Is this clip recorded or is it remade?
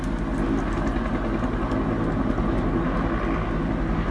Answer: recorded